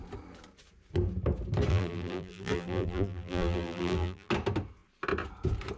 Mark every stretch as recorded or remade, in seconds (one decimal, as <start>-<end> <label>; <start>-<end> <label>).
0.0-1.7 recorded; 1.7-4.3 remade; 4.3-5.8 recorded